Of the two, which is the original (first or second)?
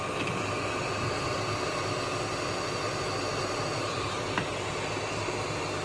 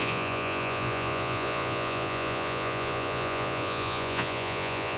first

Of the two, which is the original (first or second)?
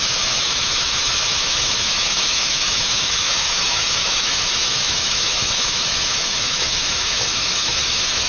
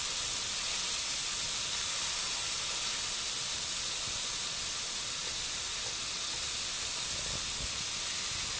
second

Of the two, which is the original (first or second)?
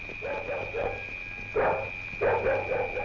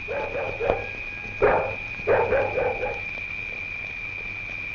first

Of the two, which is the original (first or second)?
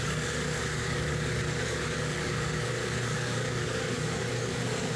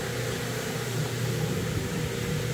second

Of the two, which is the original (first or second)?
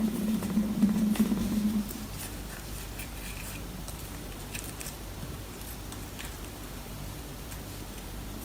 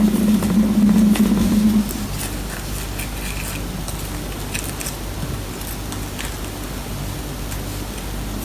second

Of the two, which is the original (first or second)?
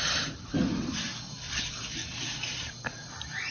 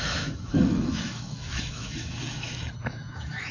first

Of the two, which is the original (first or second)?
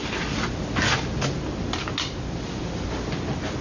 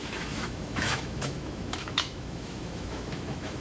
first